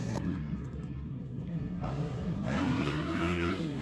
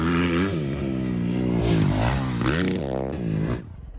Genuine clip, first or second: second